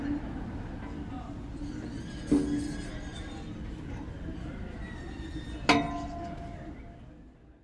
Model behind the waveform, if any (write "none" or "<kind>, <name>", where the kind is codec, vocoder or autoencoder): none